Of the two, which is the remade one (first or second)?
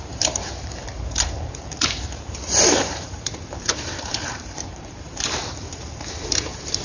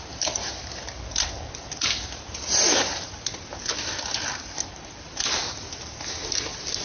first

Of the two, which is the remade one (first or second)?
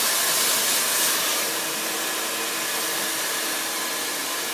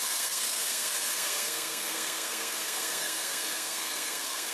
second